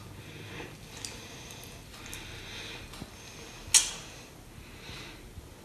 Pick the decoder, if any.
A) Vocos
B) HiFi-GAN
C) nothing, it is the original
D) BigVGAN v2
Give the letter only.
C